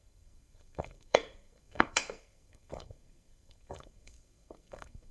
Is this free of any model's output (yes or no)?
no